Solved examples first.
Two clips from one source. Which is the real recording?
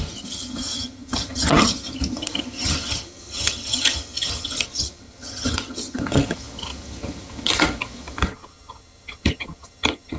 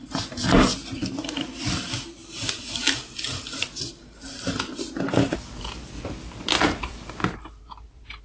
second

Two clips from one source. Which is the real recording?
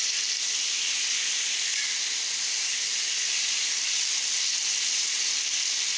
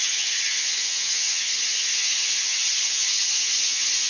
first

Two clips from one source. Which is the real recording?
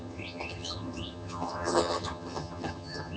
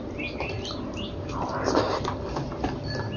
second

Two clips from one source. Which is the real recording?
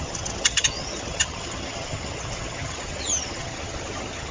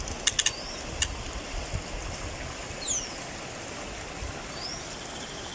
second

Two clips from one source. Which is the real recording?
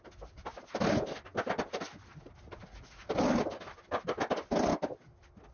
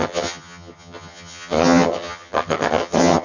first